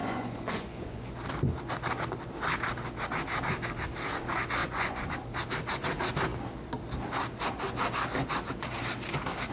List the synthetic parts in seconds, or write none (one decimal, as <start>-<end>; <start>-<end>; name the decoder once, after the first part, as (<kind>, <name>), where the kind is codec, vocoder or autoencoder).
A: 0.0-1.1 (vocoder, Vocos); 4.6-5.1